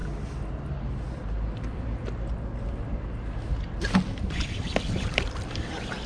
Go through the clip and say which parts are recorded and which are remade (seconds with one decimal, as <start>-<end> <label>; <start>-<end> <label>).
0.0-6.1 recorded